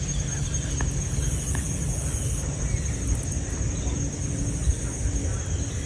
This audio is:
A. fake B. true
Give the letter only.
B